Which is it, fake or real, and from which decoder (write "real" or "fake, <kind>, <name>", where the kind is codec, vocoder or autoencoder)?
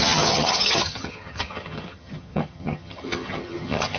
fake, vocoder, HiFi-GAN